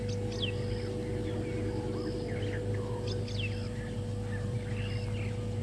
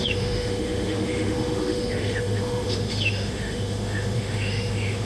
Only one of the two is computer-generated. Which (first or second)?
second